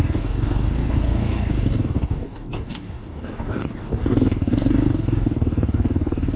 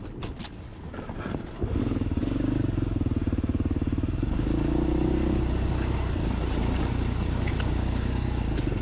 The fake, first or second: first